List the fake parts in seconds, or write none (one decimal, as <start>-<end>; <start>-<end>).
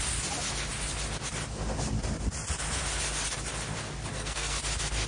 4.1-4.6